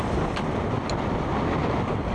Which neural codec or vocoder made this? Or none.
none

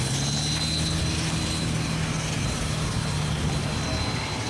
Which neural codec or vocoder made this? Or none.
none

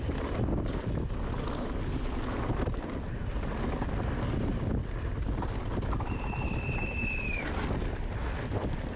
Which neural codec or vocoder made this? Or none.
none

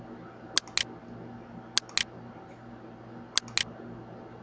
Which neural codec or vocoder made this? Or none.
none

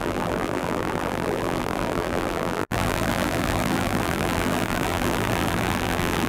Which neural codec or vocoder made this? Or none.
vocoder, BigVGAN v2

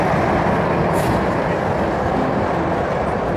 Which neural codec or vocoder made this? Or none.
none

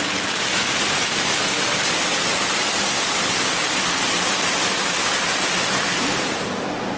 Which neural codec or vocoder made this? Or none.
none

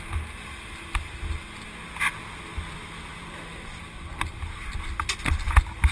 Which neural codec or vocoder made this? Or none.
none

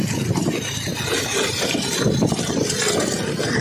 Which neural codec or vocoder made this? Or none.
none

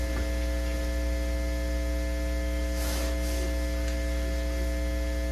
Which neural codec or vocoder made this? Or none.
none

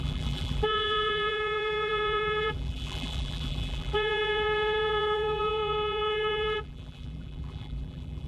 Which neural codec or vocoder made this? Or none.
vocoder, BigVGAN v2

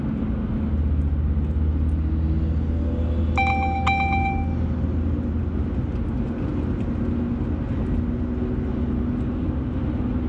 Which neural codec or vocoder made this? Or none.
none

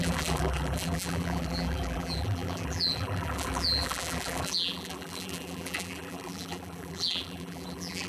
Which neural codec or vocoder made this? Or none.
vocoder, BigVGAN v2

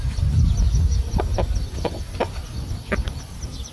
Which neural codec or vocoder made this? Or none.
none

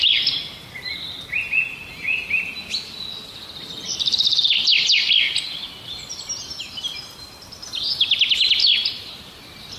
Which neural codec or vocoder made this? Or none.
none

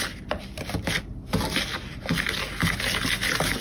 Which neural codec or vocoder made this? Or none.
vocoder, BigVGAN v2